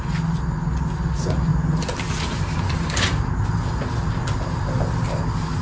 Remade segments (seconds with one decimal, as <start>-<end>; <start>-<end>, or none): 1.5-3.8

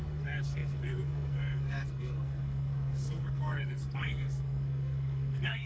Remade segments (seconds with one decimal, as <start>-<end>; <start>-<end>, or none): 0.0-5.7

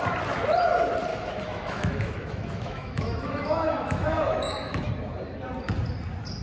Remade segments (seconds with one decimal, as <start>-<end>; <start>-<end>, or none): 1.1-4.9

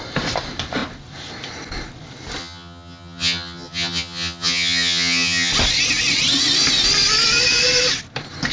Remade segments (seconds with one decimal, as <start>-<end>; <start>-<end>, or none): 2.4-5.5

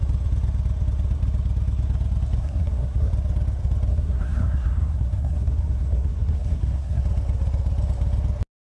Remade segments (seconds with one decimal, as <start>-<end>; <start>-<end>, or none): 2.4-3.1; 3.9-7.0

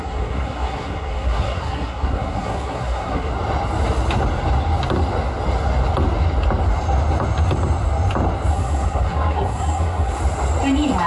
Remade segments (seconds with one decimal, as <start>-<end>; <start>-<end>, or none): 0.0-3.3; 8.5-10.2

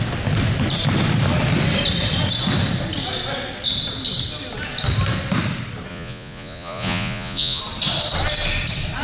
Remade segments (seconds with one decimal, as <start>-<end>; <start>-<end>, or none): 5.9-7.6

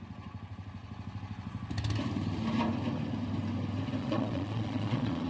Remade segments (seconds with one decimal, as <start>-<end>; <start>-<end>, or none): 4.0-5.3